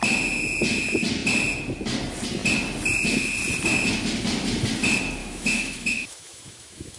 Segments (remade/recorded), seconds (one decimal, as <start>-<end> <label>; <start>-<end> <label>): 0.0-5.2 recorded; 5.2-7.0 remade